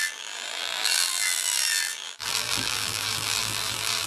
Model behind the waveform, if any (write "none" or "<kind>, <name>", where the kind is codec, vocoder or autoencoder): vocoder, BigVGAN v2